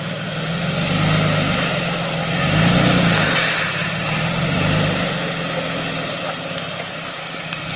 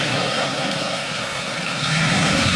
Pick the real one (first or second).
first